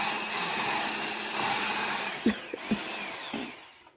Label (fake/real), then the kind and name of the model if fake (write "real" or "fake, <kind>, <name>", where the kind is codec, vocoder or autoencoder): real